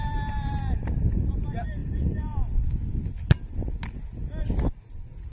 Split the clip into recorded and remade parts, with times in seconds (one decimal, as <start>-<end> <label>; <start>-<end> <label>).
0.0-1.8 recorded; 1.8-2.7 remade; 2.7-5.3 recorded

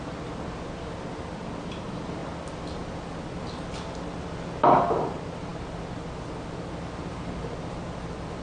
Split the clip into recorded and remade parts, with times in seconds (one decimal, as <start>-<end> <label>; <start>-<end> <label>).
0.0-8.4 recorded

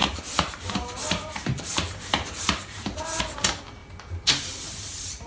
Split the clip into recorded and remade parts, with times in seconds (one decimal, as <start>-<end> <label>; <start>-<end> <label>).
0.0-3.2 remade; 3.2-3.8 recorded; 3.8-5.3 remade

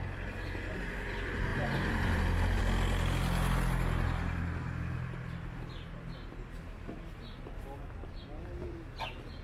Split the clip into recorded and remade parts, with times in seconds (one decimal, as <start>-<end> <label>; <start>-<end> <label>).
0.0-1.5 recorded; 1.5-2.6 remade; 2.6-9.4 recorded

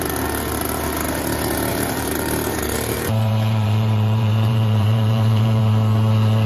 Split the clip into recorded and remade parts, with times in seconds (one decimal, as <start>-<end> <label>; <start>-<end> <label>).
0.0-1.7 recorded; 1.7-5.6 remade; 5.6-6.5 recorded